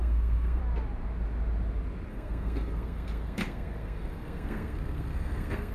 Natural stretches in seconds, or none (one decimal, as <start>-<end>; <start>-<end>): 0.6-2.1

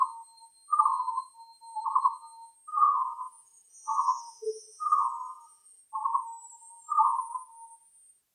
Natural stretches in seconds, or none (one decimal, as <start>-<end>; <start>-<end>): 0.0-2.7; 5.8-6.4; 7.2-8.3

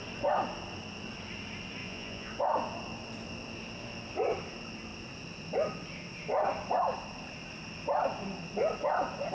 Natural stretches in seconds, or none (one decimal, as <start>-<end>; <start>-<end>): 0.0-1.8; 2.3-9.3